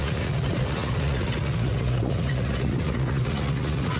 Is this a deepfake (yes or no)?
yes